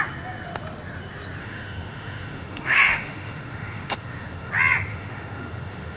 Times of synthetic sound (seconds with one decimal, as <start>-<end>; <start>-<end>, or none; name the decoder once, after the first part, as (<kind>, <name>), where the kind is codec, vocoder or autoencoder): 1.4-4.5 (autoencoder, DAC-VAE); 4.9-6.0